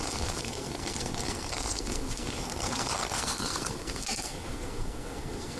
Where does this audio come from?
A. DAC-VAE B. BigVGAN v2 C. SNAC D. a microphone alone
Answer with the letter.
C